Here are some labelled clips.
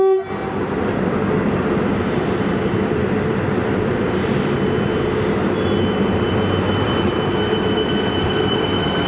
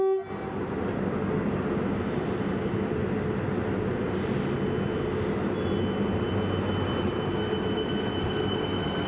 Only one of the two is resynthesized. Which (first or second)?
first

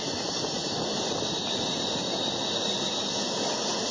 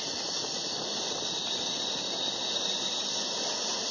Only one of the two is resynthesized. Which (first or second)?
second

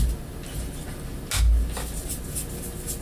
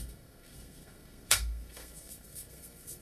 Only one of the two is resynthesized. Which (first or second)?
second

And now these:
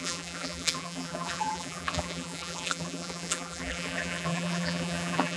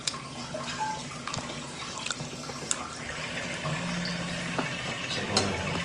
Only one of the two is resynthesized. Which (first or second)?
first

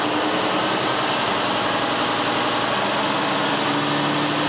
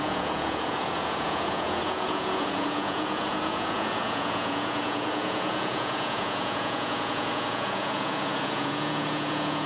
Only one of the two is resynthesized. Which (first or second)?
second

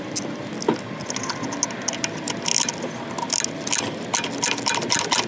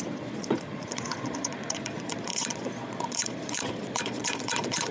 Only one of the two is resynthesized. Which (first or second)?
second